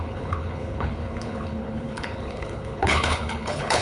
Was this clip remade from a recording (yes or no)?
yes